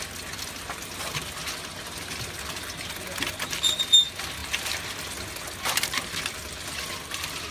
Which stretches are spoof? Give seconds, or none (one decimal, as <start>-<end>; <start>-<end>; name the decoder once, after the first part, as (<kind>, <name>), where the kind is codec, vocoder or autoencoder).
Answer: none